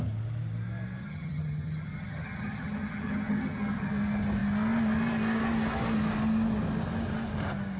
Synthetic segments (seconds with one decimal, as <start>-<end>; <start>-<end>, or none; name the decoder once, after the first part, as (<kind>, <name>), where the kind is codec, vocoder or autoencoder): 1.0-3.9 (vocoder, HiFi-GAN)